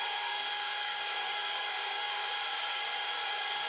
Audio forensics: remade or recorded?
remade